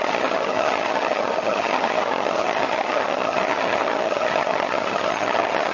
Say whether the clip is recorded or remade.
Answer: remade